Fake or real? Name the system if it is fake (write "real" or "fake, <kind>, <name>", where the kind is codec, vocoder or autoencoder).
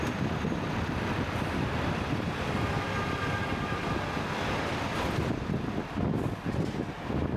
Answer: fake, vocoder, BigVGAN v2